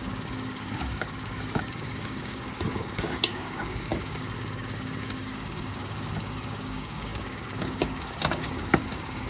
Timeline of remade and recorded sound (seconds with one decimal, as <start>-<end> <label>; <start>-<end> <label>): 0.0-9.3 remade